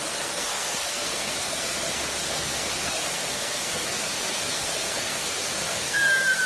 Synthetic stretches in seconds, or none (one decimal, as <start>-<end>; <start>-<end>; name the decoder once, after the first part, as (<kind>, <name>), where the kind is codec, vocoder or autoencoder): 0.0-6.5 (codec, SNAC)